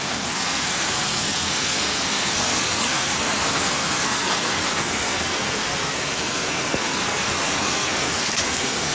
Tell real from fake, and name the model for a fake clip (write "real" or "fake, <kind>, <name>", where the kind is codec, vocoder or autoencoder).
fake, codec, SNAC